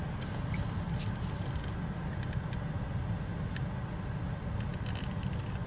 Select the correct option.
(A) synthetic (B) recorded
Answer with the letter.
B